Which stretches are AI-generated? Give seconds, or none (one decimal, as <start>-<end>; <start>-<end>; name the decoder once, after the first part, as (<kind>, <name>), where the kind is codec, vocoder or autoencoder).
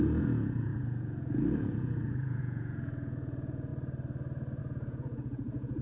0.0-3.7 (vocoder, Vocos); 4.6-5.8